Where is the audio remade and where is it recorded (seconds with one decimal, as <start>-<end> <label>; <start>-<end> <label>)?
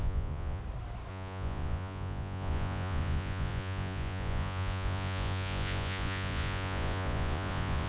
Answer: 0.0-0.6 remade; 0.6-1.1 recorded; 1.1-7.9 remade